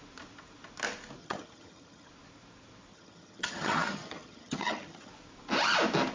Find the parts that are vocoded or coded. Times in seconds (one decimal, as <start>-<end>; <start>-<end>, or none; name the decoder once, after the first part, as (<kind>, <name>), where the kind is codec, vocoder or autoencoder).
1.2-2.1 (vocoder, HiFi-GAN); 2.9-5.1